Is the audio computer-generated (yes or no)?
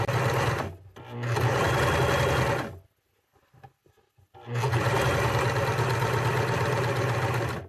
no